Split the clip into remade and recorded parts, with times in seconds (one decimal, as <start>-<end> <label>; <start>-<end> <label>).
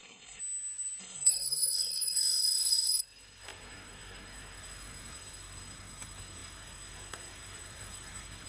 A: 0.0-0.4 remade; 0.4-1.0 recorded; 1.0-8.5 remade